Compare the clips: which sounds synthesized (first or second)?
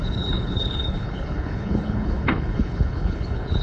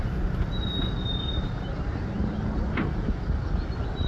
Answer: first